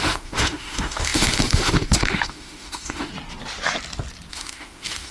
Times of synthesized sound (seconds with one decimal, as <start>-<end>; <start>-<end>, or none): 0.0-3.1; 4.3-5.1